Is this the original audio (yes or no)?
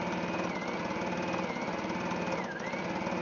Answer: yes